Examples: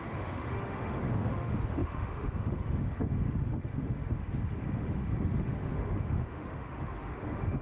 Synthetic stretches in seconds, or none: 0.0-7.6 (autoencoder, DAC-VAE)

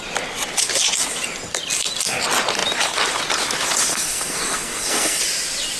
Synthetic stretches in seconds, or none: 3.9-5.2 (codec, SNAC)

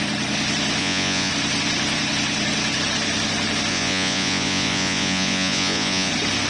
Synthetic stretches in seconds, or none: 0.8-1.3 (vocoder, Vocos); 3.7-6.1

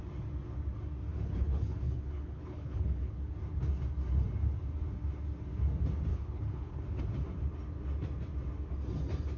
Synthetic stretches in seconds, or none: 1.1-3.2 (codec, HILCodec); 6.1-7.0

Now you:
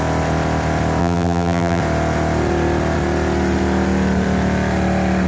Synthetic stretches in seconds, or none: 1.0-1.8 (vocoder, BigVGAN v2)

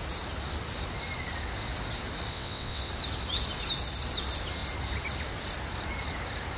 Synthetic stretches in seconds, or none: 2.3-2.9 (vocoder, WaveNeXt)

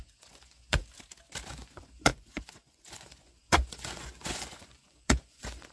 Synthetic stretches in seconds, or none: 0.0-0.8 (vocoder, Vocos); 1.5-5.7

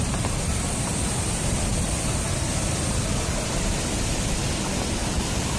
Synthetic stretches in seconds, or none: none